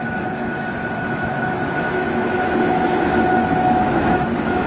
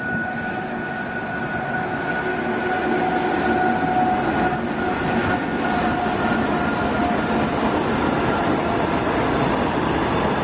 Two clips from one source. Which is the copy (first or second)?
first